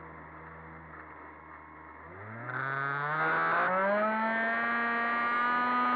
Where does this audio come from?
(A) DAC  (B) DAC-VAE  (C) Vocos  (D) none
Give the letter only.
D